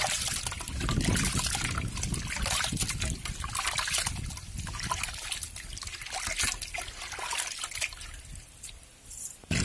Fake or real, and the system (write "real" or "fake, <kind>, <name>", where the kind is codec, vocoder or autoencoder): real